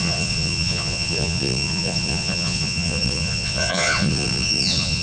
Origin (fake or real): fake